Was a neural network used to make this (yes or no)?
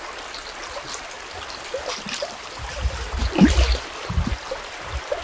yes